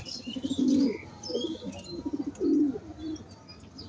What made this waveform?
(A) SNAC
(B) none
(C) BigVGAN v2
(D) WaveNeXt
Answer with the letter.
B